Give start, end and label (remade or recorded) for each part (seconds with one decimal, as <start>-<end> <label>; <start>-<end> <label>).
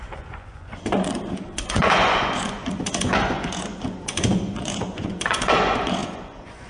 0.0-6.7 remade